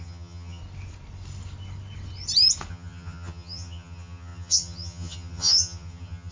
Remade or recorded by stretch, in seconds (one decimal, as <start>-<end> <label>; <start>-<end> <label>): 0.0-0.6 remade; 0.6-2.7 recorded; 2.7-6.3 remade